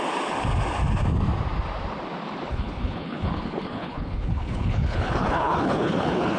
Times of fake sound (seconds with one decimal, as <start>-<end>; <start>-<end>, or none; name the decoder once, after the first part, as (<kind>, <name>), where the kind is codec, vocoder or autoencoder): 2.5-6.4 (codec, HILCodec)